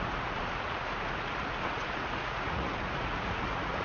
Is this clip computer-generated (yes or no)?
yes